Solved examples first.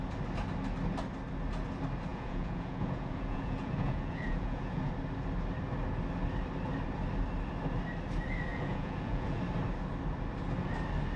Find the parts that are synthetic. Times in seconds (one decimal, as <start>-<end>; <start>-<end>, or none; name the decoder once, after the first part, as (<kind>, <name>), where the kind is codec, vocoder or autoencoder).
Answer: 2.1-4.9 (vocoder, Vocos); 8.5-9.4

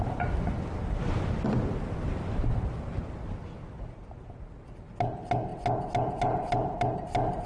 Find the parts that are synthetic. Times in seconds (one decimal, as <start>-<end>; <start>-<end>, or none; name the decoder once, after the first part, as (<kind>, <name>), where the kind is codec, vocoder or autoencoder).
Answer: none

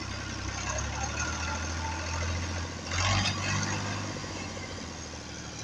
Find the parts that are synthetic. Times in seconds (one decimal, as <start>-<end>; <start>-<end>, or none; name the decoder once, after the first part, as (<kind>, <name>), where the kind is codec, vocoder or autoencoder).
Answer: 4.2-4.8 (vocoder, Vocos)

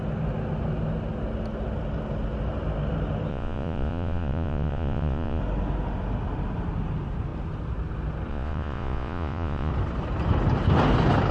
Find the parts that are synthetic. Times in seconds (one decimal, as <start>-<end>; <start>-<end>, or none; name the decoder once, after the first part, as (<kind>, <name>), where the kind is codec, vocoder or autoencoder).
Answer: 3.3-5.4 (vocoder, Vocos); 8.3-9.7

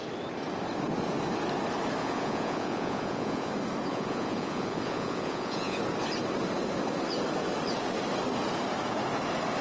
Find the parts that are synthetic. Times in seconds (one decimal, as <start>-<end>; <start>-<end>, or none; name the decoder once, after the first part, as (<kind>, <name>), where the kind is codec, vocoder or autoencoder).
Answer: 2.0-3.5 (vocoder, Vocos); 3.9-5.8

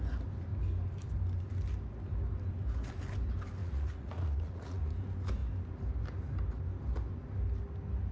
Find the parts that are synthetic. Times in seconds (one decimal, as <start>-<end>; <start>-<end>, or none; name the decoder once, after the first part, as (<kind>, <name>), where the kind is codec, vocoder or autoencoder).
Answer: 3.6-4.9 (vocoder, Vocos)

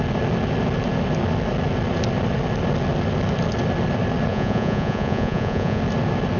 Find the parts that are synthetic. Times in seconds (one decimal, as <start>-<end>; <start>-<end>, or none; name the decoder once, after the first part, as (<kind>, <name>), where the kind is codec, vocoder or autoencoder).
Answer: 4.3-5.8 (vocoder, Vocos)

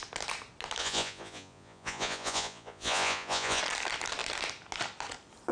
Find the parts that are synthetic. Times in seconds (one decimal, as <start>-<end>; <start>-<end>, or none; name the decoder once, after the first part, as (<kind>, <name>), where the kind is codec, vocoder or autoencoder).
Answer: 0.8-3.6 (vocoder, Vocos)